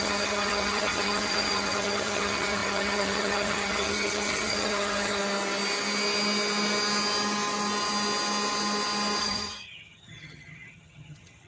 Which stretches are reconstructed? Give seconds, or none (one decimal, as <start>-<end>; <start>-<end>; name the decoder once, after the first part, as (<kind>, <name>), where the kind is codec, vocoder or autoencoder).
0.0-5.2 (vocoder, HiFi-GAN); 9.2-11.5